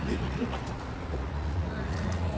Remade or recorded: remade